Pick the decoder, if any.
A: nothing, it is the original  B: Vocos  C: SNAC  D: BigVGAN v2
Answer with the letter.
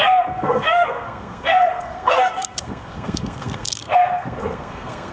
C